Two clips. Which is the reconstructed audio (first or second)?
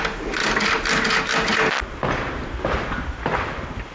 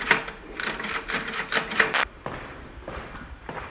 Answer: second